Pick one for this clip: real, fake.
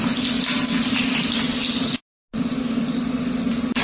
real